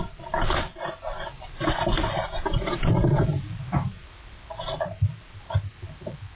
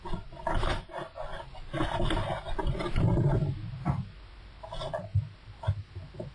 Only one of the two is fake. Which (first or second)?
first